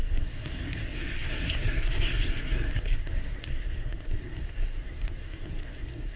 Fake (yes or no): yes